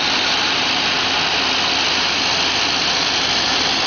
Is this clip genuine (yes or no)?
yes